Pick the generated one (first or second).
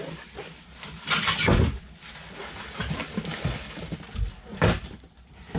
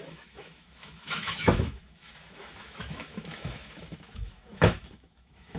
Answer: second